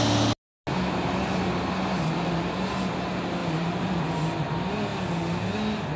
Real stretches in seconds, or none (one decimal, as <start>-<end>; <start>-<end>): 0.0-3.4; 4.0-6.0